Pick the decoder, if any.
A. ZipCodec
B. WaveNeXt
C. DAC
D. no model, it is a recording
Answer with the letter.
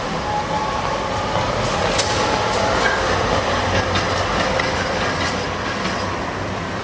D